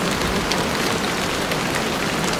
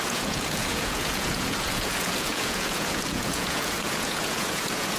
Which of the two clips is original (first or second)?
first